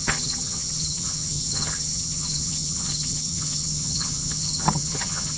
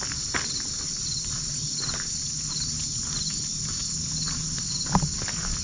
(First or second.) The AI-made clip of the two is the first